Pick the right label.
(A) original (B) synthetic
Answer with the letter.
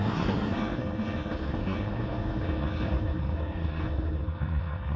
B